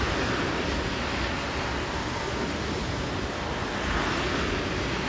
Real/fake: real